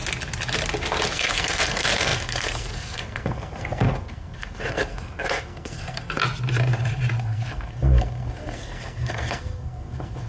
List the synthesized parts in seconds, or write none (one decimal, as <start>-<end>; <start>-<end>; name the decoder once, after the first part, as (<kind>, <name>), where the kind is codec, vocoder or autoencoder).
1.1-6.2 (codec, SNAC); 7.2-10.3